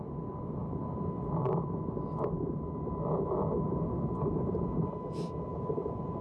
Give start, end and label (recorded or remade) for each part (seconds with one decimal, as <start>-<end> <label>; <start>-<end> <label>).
0.0-6.2 recorded